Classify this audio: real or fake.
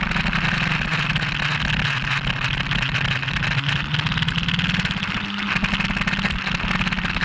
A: real